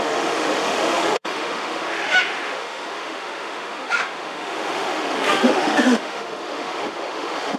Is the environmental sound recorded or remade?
remade